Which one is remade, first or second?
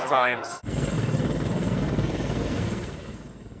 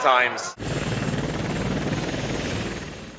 first